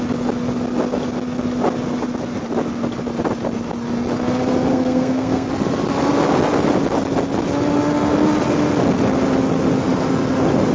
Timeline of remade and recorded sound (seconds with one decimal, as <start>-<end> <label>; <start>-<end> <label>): 0.0-4.7 recorded; 4.7-5.5 remade; 5.5-10.7 recorded